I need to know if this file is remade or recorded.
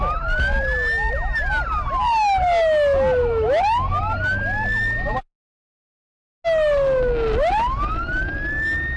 recorded